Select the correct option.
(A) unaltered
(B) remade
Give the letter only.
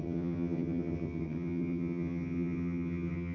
B